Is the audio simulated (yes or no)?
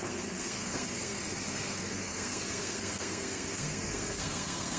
yes